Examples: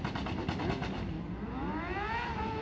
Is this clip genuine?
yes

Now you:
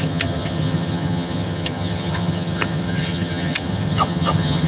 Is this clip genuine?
no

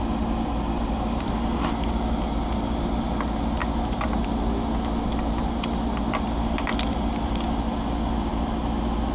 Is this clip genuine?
yes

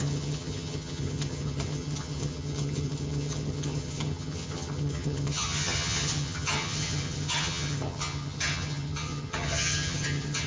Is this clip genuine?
no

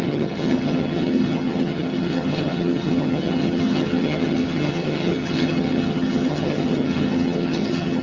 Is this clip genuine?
no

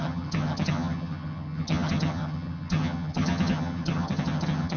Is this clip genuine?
no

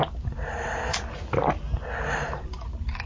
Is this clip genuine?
yes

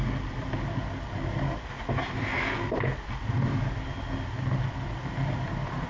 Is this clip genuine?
yes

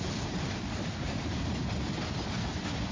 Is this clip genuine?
yes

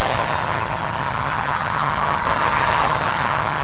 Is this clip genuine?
no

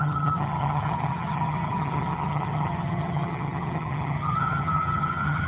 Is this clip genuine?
no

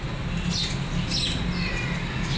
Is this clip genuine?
yes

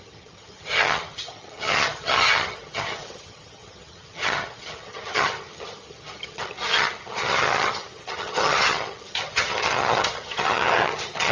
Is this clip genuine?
no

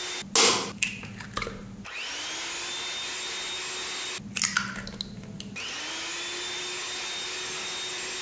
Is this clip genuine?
yes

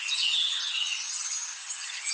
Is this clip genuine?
no